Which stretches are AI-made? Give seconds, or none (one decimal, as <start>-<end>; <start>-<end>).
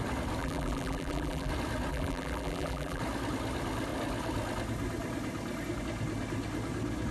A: 0.4-1.5; 1.9-3.0